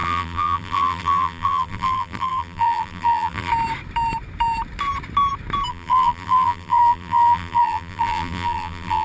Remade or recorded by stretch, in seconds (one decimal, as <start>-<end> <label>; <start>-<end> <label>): 0.0-3.5 remade; 3.5-5.7 recorded; 5.7-9.0 remade

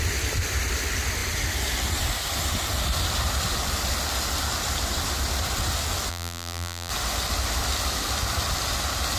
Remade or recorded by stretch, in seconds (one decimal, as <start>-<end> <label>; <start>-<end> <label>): 0.0-6.1 recorded; 6.1-6.9 remade; 6.9-9.2 recorded

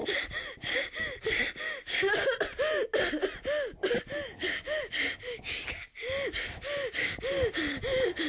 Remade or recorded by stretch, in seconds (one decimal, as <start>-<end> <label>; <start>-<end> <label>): 0.0-8.3 recorded

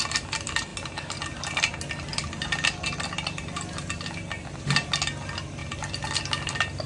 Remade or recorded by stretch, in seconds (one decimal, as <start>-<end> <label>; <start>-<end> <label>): 0.0-6.9 recorded